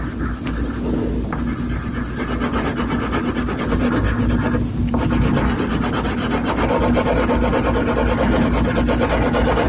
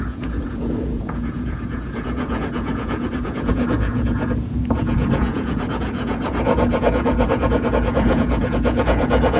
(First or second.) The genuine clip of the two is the first